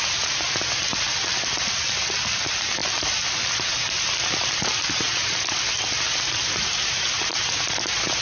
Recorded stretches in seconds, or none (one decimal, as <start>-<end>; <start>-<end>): 0.0-8.2